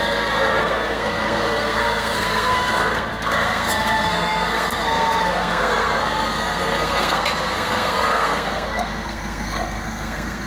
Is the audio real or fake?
fake